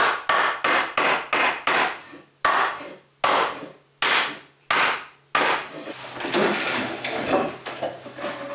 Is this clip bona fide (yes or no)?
yes